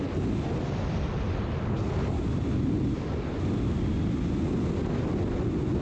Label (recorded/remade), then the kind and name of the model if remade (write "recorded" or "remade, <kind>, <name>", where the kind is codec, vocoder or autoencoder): recorded